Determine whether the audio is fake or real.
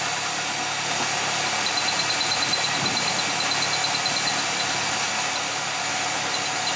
real